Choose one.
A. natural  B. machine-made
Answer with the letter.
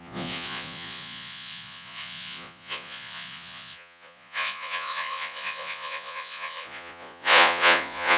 B